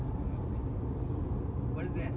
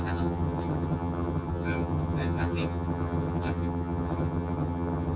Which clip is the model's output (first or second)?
second